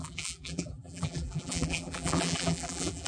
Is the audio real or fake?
fake